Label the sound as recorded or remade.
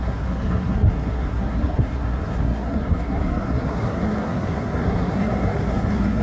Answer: remade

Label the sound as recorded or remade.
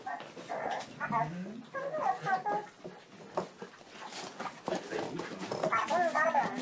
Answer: recorded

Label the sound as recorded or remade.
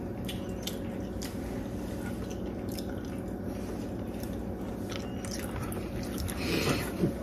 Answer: recorded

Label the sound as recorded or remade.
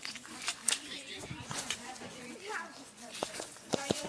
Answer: remade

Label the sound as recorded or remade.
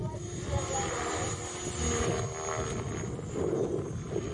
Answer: recorded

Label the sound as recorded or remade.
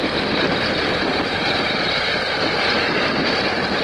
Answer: remade